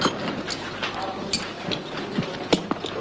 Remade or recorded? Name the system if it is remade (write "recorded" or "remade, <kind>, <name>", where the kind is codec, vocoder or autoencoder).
recorded